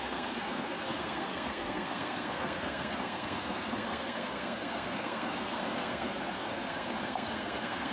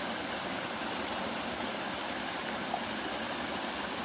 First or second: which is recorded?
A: second